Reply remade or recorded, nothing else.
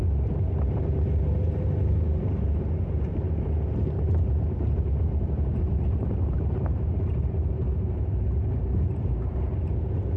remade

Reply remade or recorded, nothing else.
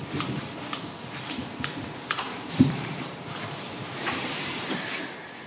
remade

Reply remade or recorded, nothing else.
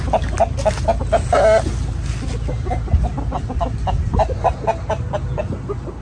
recorded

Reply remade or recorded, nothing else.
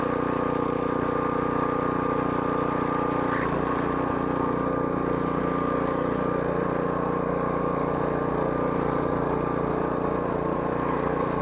recorded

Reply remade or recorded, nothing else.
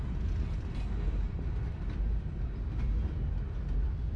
recorded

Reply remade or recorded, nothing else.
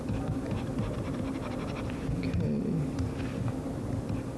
remade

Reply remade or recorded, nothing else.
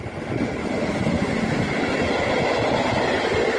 recorded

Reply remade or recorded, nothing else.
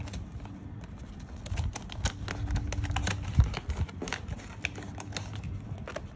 recorded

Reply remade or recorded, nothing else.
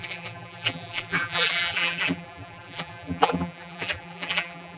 remade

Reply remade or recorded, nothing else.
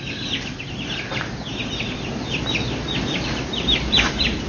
remade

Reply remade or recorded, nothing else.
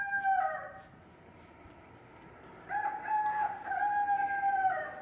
remade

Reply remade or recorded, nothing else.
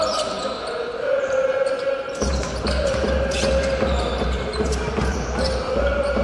remade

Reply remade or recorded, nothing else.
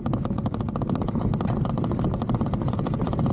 recorded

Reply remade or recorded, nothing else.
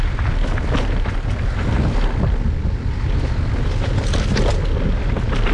recorded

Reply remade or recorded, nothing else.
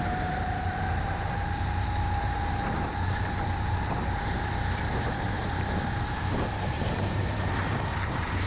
remade